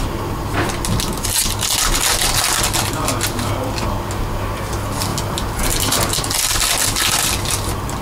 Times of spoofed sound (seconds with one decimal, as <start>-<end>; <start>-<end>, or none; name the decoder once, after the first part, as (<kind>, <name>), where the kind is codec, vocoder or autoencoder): none